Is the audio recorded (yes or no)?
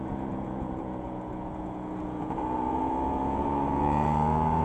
no